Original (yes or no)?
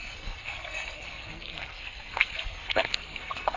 no